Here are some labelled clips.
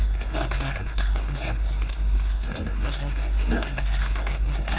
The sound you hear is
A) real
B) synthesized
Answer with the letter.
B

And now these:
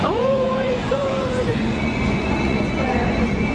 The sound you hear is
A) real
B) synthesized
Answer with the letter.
B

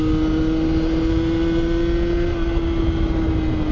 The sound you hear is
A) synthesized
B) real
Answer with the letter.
B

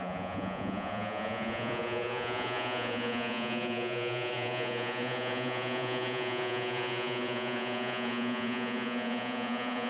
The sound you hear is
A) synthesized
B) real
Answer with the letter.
A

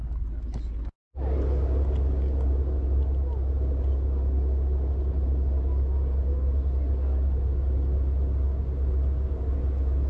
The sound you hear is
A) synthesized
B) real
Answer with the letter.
B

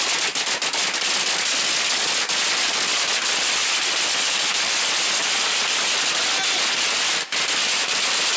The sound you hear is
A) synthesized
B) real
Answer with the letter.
B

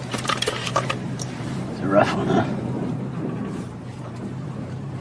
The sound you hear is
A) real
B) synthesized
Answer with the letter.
B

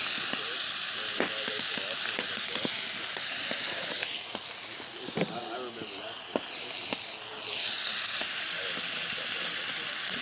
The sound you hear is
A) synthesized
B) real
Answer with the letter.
B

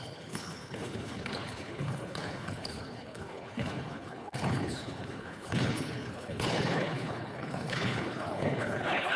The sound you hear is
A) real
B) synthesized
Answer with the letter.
B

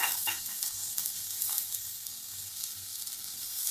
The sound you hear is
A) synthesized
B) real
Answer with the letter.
A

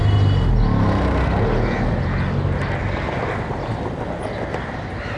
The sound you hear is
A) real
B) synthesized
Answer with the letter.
A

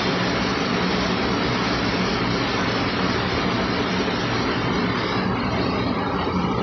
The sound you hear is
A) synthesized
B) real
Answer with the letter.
B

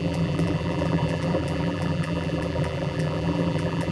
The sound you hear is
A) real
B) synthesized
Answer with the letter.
B